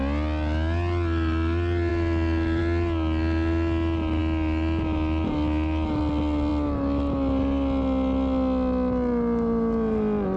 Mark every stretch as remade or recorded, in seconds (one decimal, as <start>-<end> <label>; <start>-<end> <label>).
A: 0.0-10.4 recorded